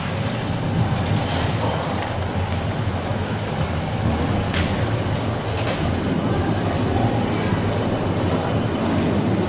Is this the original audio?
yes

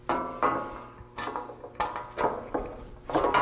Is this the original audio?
yes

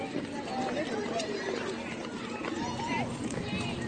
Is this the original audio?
yes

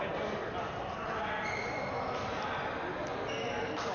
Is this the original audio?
yes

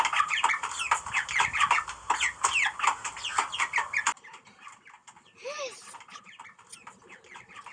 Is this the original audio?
yes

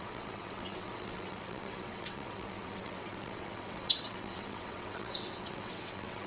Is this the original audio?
no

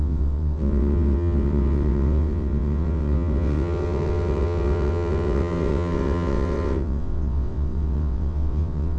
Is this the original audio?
no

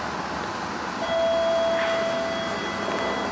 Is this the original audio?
yes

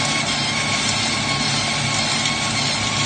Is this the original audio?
yes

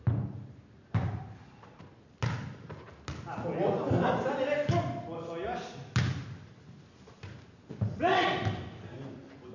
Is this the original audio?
yes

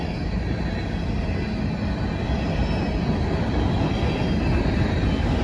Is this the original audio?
yes